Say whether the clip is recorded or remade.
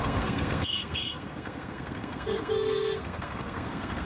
remade